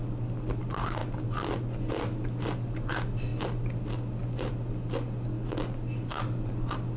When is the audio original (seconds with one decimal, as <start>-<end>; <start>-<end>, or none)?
0.0-7.0